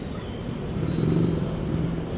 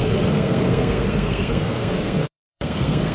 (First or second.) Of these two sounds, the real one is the first